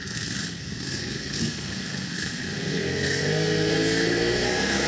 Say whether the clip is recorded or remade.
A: remade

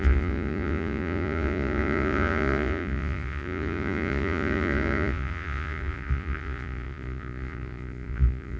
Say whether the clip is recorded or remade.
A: remade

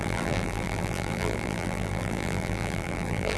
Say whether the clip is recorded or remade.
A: remade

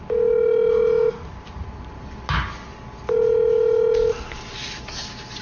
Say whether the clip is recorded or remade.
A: recorded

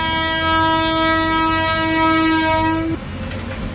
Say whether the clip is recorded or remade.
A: recorded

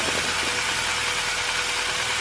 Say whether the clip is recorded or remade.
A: recorded